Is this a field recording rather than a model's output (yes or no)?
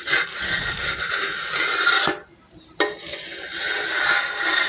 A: yes